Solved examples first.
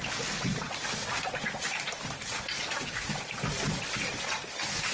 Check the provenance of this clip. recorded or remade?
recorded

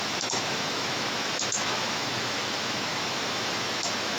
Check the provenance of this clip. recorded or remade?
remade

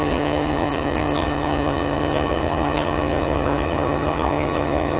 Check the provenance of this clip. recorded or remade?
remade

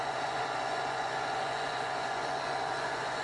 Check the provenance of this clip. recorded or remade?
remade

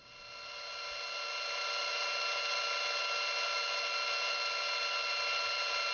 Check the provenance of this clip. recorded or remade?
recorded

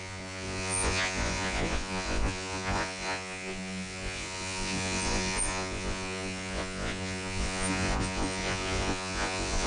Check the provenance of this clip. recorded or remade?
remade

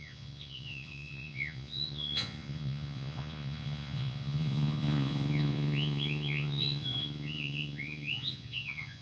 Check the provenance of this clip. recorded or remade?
remade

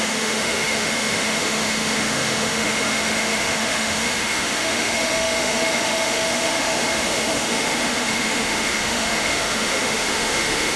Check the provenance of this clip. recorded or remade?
remade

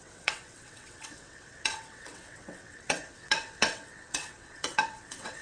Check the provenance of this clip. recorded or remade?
remade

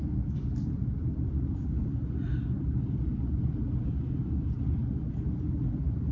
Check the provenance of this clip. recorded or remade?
recorded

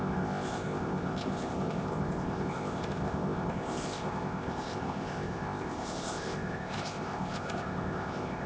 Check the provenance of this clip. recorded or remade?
remade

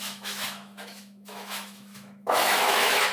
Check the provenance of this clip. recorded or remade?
remade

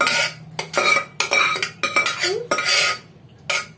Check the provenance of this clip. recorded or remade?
recorded